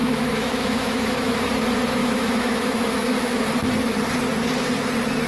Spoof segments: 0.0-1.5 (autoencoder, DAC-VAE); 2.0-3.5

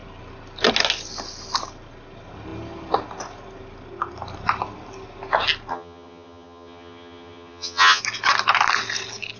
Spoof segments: 5.7-8.0 (vocoder, HiFi-GAN)

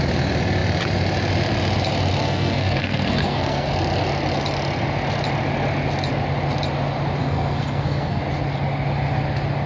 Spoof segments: 2.2-3.7 (codec, SNAC); 7.2-8.2